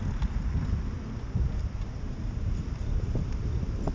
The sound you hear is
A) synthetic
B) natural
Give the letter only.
B